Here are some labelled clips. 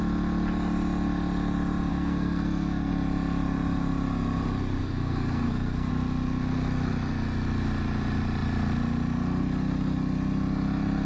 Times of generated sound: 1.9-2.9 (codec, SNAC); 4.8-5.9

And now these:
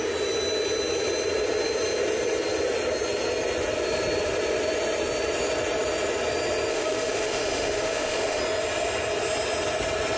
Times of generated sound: 6.7-8.4 (autoencoder, DAC-VAE)

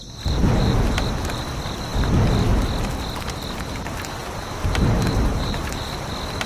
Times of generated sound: 0.4-1.4 (vocoder, BigVGAN v2); 4.2-6.1

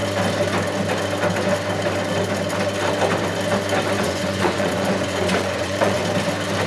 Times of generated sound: 4.0-6.0 (vocoder, Vocos)